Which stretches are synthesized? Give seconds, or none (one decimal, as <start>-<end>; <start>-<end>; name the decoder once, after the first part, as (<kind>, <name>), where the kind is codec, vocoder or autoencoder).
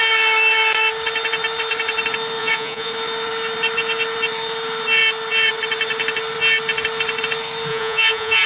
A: 2.4-2.9 (vocoder, Vocos); 7.7-8.5